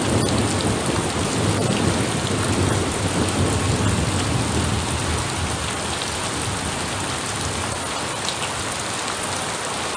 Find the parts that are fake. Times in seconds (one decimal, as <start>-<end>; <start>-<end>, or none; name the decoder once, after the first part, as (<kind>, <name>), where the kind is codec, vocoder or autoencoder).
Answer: none